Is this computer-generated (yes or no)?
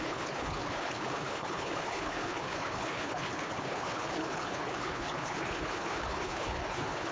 yes